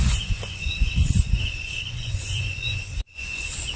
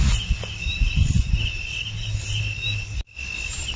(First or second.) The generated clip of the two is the first